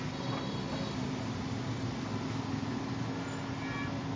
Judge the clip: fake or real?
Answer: real